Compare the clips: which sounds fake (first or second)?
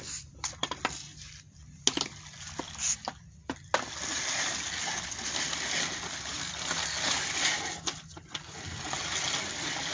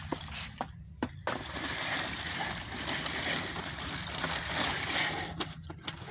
second